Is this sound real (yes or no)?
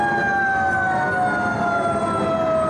yes